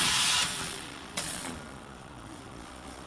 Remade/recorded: remade